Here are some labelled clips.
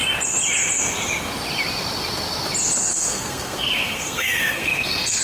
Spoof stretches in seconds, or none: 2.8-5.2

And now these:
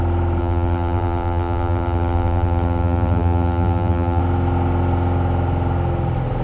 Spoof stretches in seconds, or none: 0.4-4.2

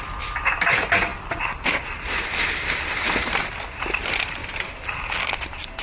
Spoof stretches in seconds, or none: 4.4-5.1

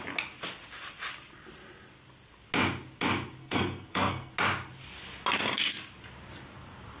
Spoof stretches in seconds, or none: 3.4-4.3

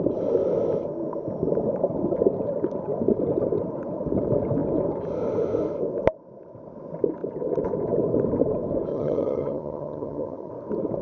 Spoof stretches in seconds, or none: 8.9-10.5

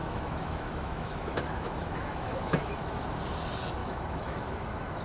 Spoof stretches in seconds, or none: 0.0-3.0; 3.8-5.0

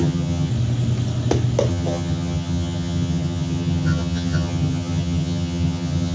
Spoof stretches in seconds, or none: 0.0-0.5; 1.7-6.1